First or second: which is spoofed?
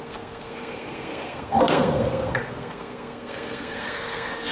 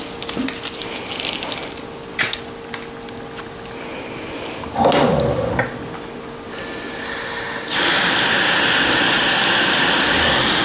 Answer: first